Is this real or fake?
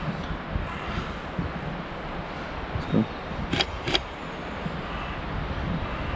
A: real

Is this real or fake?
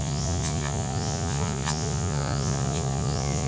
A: fake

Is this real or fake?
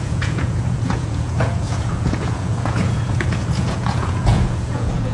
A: fake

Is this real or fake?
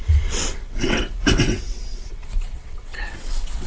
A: fake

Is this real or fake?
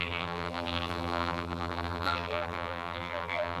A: fake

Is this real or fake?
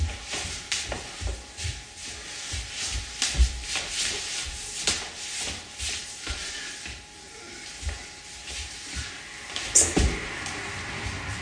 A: real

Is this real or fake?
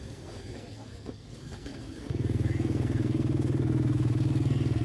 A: fake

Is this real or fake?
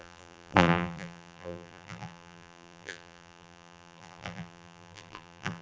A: fake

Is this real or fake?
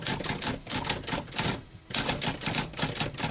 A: real